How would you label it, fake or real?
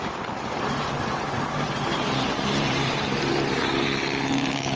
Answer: fake